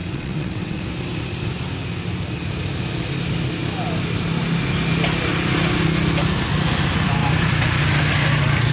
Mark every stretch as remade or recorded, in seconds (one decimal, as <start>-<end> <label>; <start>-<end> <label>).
0.0-0.8 remade; 0.8-8.7 recorded